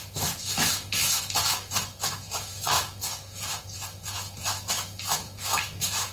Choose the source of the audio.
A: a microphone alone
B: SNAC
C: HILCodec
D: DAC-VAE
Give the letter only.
D